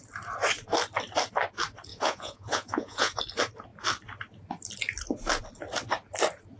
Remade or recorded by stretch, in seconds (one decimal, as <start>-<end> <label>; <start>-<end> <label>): 0.0-1.9 recorded; 1.9-3.2 remade; 3.2-6.6 recorded